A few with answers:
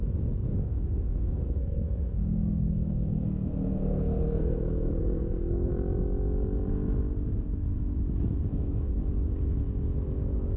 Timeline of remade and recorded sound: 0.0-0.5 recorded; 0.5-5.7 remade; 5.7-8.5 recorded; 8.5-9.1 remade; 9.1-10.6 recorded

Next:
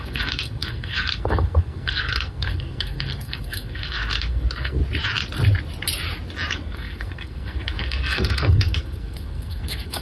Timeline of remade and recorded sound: 0.0-4.8 remade; 4.8-6.5 recorded; 6.5-10.0 remade

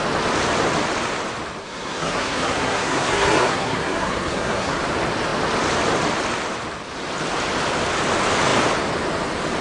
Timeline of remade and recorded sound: 0.0-1.6 recorded; 1.6-4.8 remade; 4.8-9.6 recorded

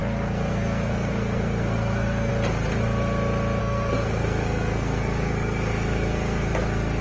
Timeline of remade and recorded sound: 0.0-2.3 remade; 2.3-3.6 recorded; 3.6-7.0 remade

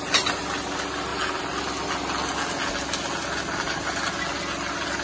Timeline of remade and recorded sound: 0.0-5.0 recorded

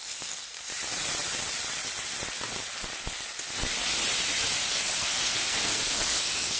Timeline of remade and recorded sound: 0.0-0.7 remade; 0.7-4.7 recorded; 4.7-6.6 remade